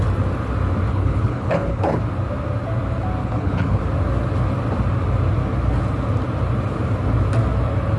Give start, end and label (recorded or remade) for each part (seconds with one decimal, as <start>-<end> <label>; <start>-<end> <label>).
0.0-0.9 recorded; 0.9-2.0 remade; 2.0-3.2 recorded; 3.2-3.8 remade; 3.8-8.0 recorded